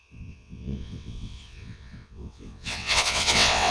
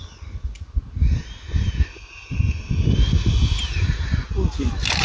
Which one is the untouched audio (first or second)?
second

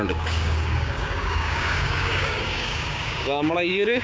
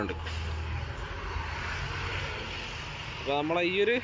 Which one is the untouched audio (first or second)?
second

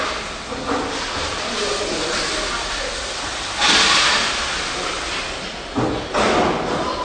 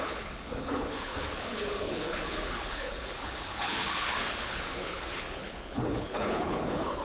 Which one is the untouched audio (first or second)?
first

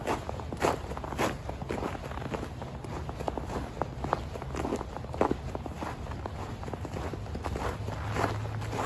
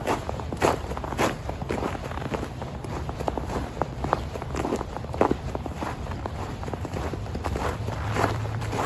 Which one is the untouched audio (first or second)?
first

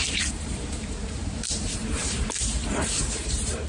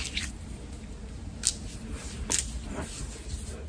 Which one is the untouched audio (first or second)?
second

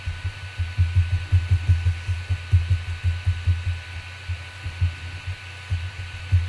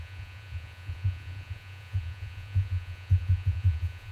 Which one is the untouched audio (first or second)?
first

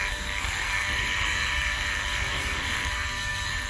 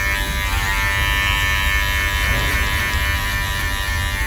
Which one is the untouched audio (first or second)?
second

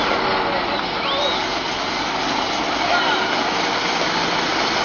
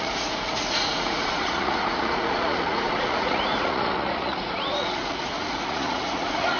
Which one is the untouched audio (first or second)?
first